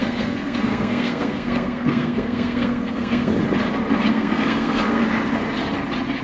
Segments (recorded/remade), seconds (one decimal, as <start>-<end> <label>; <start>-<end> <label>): 0.0-3.3 remade; 3.3-4.1 recorded; 4.1-5.0 remade; 5.0-6.2 recorded